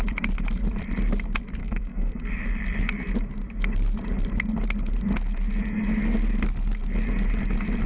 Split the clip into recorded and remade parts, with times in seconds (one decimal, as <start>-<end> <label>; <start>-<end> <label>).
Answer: 0.0-1.6 recorded; 1.6-2.2 remade; 2.2-7.9 recorded